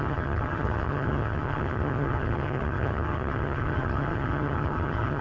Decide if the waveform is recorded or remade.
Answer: remade